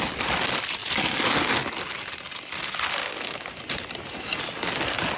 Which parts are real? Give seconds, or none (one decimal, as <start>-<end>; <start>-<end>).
0.0-3.0; 3.6-5.2